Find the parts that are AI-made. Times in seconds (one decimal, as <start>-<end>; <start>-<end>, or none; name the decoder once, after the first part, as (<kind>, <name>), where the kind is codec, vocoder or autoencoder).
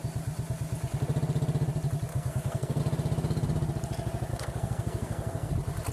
2.1-2.8 (codec, SNAC); 4.3-5.5